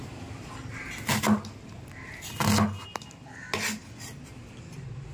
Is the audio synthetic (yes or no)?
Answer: no